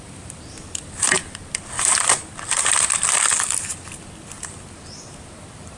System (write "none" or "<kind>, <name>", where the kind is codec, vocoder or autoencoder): none